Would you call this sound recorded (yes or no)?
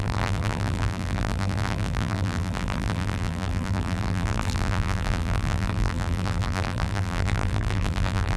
no